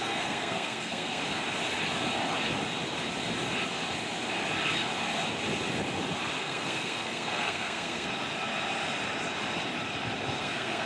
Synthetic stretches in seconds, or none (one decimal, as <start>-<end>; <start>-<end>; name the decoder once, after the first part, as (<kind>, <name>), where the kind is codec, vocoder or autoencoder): 0.0-1.2 (codec, SNAC); 6.4-8.1; 10.4-10.9